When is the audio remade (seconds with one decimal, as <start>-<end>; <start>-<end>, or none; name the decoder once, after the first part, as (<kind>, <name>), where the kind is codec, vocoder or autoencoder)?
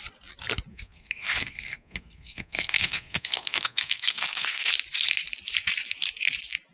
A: 0.7-4.7 (codec, SNAC)